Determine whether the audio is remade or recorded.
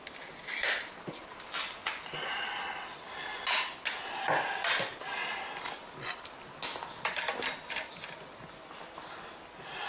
recorded